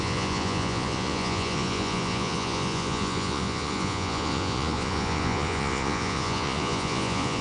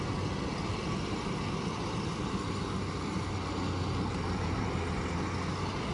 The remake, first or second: first